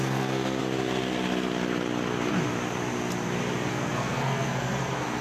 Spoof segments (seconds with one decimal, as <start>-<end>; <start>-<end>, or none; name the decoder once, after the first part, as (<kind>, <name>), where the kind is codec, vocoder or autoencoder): 0.0-0.6 (codec, SNAC); 3.7-5.2